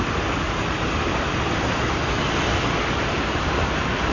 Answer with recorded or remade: recorded